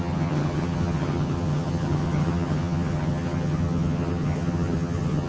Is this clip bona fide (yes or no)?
no